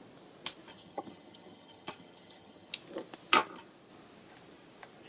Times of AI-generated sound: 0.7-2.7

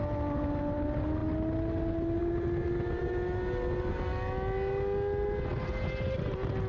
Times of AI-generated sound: none

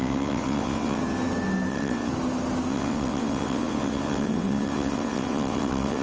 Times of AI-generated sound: 0.0-1.0; 1.7-2.1; 2.7-6.0

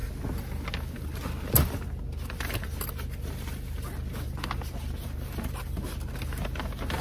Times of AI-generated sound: none

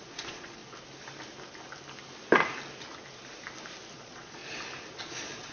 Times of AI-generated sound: 0.0-0.6; 3.9-4.4; 5.0-5.5

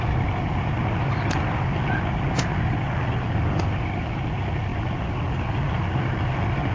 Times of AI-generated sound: none